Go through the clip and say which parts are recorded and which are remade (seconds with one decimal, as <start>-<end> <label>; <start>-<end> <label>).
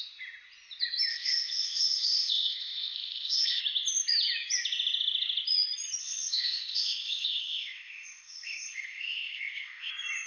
0.0-1.1 recorded; 1.1-3.6 remade; 3.6-6.0 recorded; 6.0-9.9 remade; 9.9-10.3 recorded